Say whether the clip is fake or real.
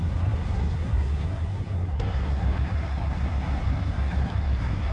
fake